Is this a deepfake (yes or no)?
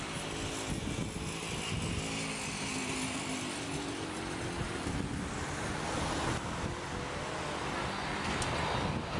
no